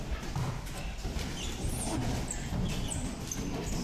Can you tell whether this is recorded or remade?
recorded